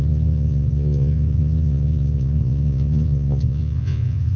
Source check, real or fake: fake